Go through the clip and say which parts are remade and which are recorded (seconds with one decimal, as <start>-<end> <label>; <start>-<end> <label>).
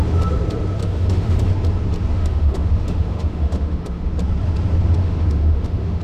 0.0-0.8 recorded; 0.8-1.5 remade; 1.5-2.1 recorded; 2.1-4.1 remade; 4.1-5.0 recorded; 5.0-6.0 remade